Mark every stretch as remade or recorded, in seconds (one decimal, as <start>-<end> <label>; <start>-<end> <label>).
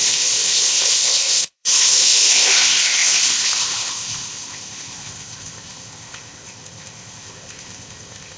0.0-8.4 remade